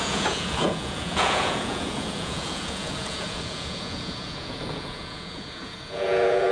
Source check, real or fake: fake